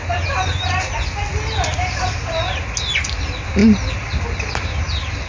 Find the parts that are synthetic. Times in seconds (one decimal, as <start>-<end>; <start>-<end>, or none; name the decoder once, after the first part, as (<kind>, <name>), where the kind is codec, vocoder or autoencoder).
none